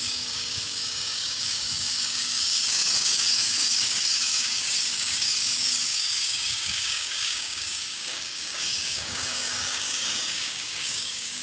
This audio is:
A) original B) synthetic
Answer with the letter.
B